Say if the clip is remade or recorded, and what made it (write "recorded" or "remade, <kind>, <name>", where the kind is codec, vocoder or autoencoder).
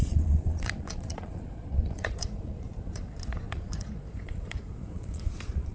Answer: remade, vocoder, Vocos